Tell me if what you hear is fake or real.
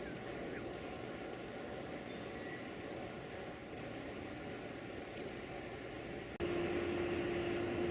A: real